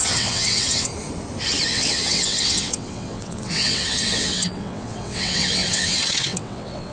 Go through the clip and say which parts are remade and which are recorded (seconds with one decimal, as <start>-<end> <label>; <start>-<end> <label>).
0.0-0.9 remade; 0.9-1.7 recorded; 1.7-6.9 remade